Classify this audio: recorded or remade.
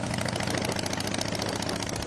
recorded